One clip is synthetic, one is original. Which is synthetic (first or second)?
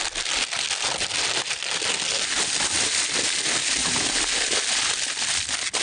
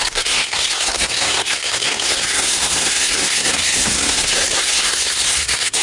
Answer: second